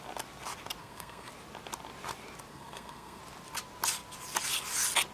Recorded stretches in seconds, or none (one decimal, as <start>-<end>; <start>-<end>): 0.0-0.8; 1.3-2.5; 3.2-5.1